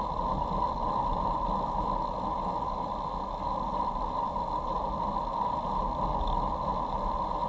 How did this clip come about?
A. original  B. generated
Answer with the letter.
A